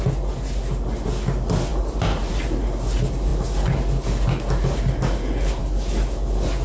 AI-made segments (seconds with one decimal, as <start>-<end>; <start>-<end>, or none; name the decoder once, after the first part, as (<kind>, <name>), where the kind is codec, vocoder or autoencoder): none